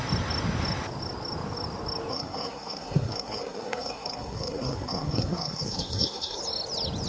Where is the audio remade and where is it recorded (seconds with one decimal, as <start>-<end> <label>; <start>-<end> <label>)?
0.0-2.1 recorded; 2.1-6.4 remade; 6.4-7.1 recorded